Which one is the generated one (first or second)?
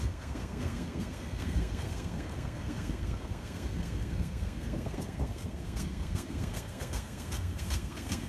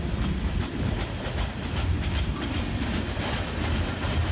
first